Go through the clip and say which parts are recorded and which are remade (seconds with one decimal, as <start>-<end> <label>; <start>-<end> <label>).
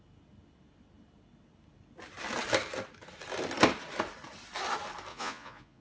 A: 0.0-5.1 recorded; 5.1-5.8 remade